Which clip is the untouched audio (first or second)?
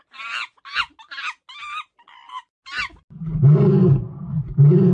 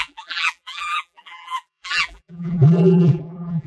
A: first